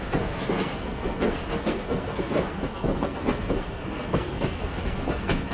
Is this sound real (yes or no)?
no